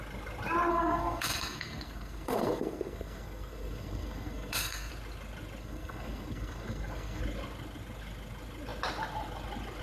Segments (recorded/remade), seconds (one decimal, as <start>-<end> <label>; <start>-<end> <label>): 0.0-0.7 recorded; 0.7-4.9 remade; 4.9-5.6 recorded; 5.6-7.2 remade; 7.2-9.8 recorded